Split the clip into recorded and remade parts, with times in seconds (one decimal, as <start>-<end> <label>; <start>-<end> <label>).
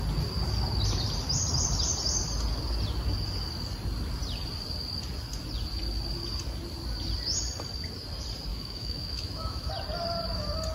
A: 0.0-8.5 recorded; 8.5-9.7 remade; 9.7-10.7 recorded